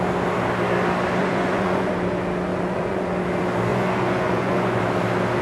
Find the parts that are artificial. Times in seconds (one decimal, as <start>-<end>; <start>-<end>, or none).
1.2-1.9; 2.5-3.0; 3.7-4.8